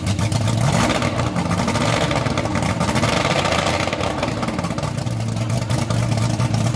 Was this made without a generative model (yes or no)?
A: yes